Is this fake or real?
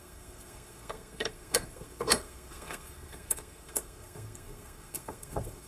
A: fake